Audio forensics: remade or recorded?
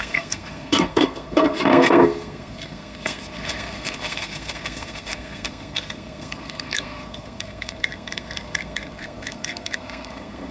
remade